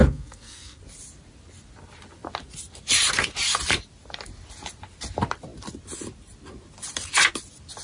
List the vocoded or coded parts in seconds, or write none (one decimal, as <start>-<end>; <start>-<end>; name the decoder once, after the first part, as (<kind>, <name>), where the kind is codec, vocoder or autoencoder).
0.0-0.8 (codec, SNAC)